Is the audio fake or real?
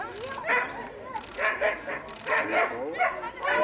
real